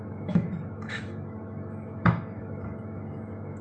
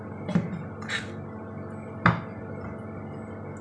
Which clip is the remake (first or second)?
first